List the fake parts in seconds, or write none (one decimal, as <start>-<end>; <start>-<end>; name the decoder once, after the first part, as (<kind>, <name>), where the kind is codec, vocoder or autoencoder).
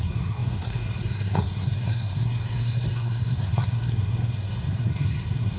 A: 0.0-5.6 (codec, SNAC)